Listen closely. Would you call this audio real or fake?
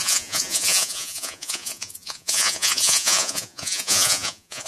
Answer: fake